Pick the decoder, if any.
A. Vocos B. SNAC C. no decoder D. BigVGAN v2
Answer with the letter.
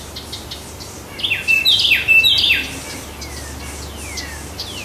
C